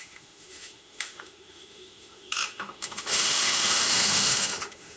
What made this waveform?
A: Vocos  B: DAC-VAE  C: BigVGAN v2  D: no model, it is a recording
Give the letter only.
B